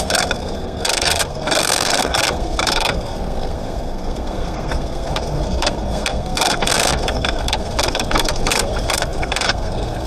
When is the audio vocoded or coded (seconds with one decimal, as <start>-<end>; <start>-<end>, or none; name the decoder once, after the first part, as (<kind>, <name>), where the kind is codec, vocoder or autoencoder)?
0.0-10.1 (codec, SNAC)